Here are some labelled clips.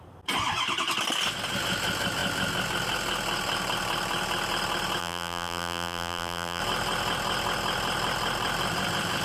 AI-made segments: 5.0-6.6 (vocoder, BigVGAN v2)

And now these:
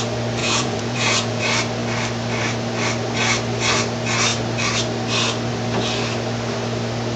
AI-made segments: 0.4-1.4 (vocoder, Vocos)

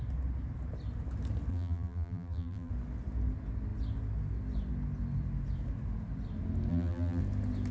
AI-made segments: 1.5-2.7 (vocoder, BigVGAN v2); 6.7-7.2

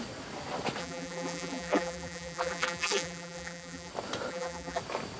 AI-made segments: 0.8-3.9 (vocoder, BigVGAN v2); 4.3-4.8

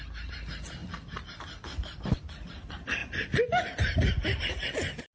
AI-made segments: 0.0-0.8 (vocoder, BigVGAN v2); 2.3-5.1

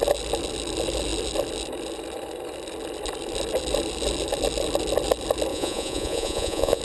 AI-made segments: 5.5-6.8 (vocoder, Vocos)

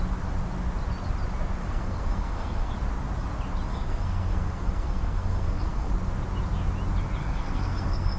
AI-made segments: 1.6-2.7 (codec, SNAC); 3.7-5.9; 7.2-8.2

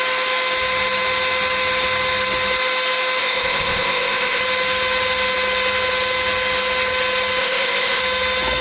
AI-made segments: 3.2-4.4 (codec, ZipCodec); 7.4-8.0